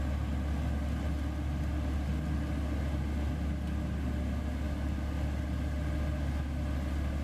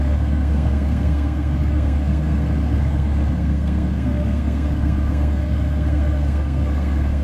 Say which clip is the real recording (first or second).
first